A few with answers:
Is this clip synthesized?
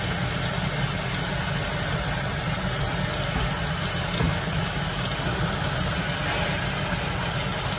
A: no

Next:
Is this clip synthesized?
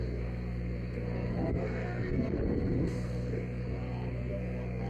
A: yes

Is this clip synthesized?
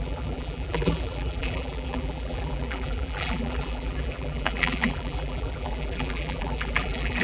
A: yes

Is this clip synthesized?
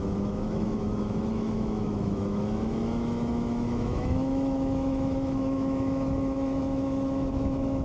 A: yes